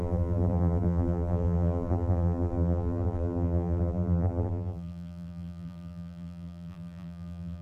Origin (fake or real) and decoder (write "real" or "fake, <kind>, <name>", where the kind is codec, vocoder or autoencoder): fake, vocoder, BigVGAN v2